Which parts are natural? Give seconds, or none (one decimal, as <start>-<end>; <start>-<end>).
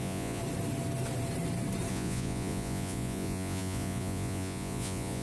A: 0.4-1.9